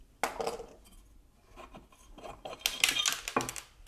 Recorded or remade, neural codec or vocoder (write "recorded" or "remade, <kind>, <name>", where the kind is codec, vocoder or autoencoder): recorded